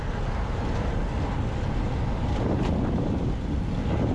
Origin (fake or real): real